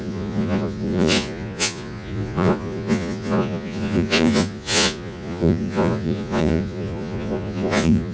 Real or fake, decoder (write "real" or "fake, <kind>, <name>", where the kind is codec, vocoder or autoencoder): fake, vocoder, Vocos